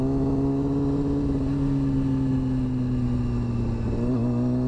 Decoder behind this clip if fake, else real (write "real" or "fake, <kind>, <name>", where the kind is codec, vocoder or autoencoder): real